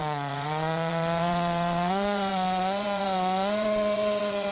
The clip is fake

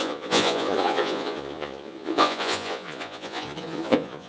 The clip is fake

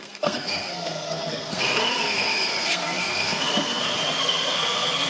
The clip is fake